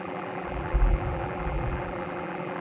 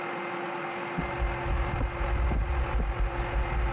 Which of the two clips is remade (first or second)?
first